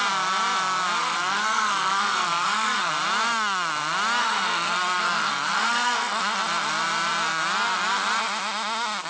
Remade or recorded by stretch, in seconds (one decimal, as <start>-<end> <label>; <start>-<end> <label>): 0.0-1.0 recorded; 1.0-2.9 remade; 2.9-4.2 recorded; 4.2-6.2 remade; 6.2-9.1 recorded